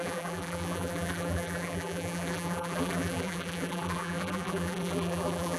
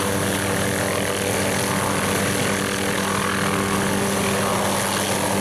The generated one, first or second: first